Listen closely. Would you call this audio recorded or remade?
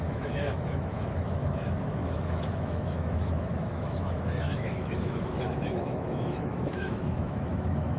remade